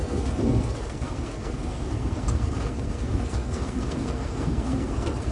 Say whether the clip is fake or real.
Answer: fake